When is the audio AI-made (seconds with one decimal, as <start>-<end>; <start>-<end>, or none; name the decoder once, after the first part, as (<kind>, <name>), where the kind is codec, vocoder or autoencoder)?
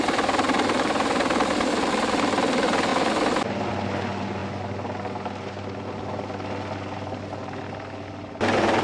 none